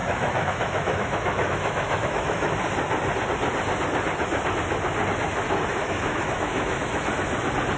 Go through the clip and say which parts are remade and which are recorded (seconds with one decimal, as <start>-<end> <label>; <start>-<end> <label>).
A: 0.0-2.5 remade; 2.5-5.8 recorded; 5.8-7.0 remade; 7.0-7.8 recorded